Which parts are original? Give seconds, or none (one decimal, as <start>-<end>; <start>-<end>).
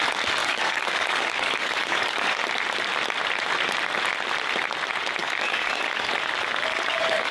0.0-0.4; 2.4-5.2; 6.1-6.7